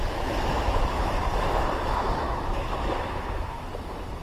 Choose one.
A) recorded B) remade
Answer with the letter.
B